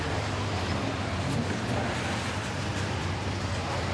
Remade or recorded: recorded